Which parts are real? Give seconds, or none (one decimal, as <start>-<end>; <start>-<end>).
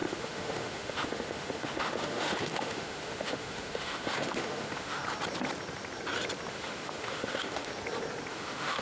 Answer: 5.0-6.5; 7.7-8.3